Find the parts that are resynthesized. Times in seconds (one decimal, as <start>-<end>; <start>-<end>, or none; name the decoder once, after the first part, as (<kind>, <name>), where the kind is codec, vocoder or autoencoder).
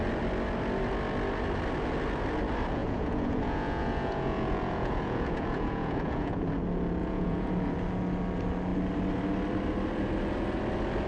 2.8-6.5 (vocoder, Vocos); 7.0-7.5